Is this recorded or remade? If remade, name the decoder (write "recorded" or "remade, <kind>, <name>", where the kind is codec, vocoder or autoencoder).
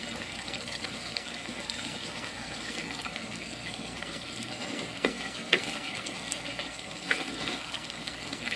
remade, codec, SNAC